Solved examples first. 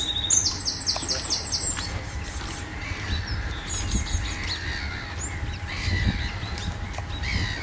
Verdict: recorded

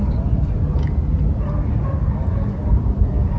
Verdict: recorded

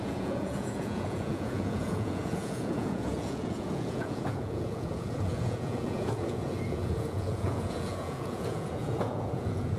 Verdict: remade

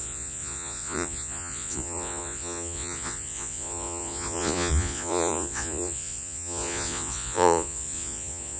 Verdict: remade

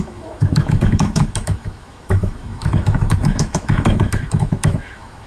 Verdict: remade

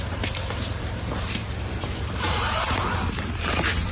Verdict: remade